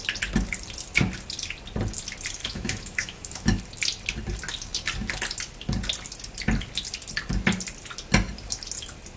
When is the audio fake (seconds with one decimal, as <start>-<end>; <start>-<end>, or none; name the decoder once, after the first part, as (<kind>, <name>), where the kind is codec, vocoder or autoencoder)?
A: 2.4-3.6 (autoencoder, DAC-VAE)